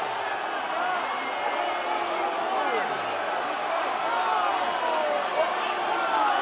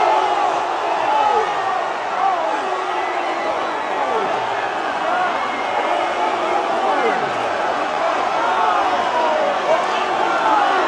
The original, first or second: first